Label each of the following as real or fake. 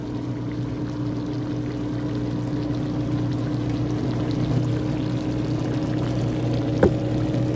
real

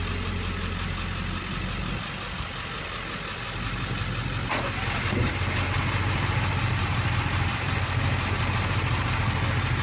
real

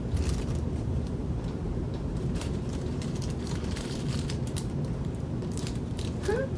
fake